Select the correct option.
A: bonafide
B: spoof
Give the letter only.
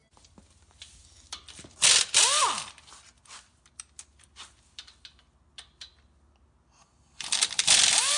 A